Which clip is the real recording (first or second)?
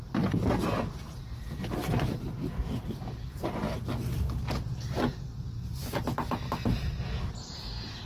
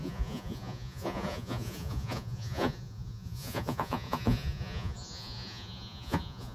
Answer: first